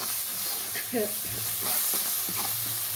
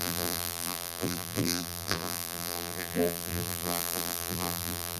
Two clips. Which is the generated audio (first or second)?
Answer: second